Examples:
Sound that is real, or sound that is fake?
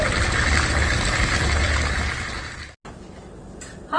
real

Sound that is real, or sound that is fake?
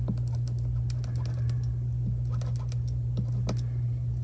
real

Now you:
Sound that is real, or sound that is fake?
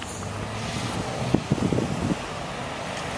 real